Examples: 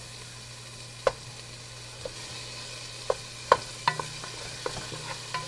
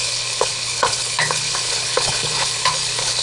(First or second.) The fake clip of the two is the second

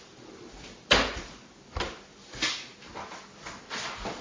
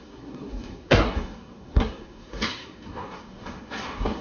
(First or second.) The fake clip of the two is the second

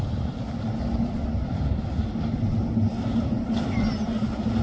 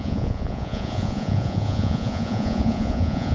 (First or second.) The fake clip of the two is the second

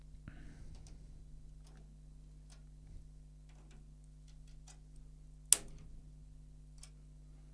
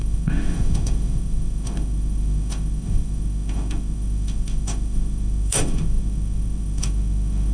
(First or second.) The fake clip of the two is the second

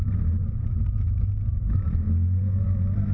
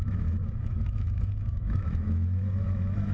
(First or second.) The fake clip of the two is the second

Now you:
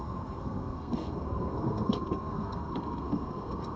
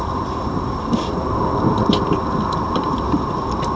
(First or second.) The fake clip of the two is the first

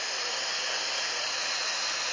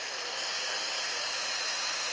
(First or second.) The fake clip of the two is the second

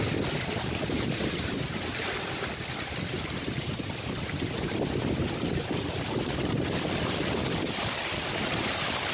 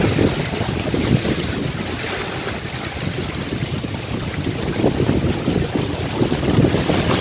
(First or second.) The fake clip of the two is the first